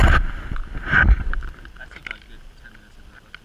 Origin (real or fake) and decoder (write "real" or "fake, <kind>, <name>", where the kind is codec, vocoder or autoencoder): real